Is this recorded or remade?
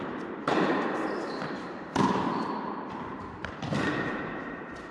remade